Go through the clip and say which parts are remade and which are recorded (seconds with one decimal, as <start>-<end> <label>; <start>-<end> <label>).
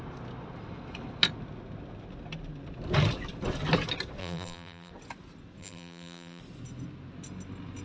0.0-4.2 recorded; 4.2-4.9 remade; 4.9-5.6 recorded; 5.6-6.4 remade; 6.4-7.8 recorded